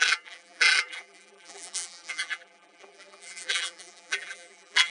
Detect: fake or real fake